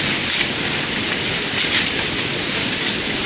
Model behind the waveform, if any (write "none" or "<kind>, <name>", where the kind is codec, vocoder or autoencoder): none